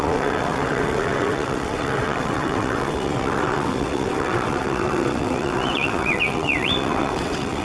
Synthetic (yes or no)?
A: yes